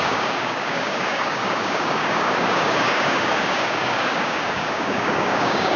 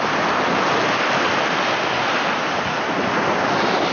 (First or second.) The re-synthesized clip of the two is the first